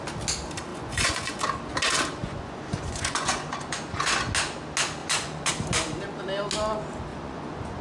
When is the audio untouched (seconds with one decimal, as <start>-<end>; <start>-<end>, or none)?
0.0-0.7; 1.4-2.2; 4.2-5.0; 5.5-7.1